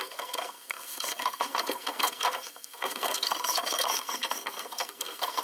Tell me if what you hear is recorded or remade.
remade